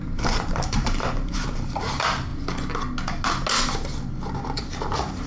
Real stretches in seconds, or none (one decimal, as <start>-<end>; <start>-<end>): 2.3-4.4